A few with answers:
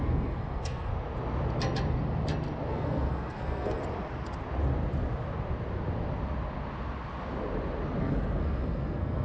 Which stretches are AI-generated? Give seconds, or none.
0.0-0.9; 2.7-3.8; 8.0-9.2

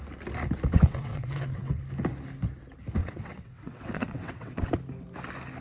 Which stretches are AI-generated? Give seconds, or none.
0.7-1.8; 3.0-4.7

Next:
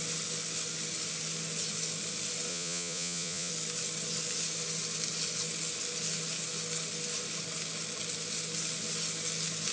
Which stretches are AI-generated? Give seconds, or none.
2.5-3.5

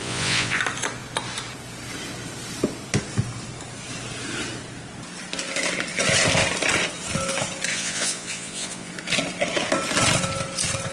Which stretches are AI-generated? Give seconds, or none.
0.0-0.6; 7.7-8.9